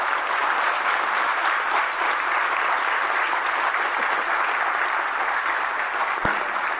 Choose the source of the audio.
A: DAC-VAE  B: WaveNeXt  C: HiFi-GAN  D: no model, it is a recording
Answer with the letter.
D